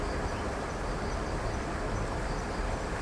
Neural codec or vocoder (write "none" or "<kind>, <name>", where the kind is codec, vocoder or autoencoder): vocoder, BigVGAN v2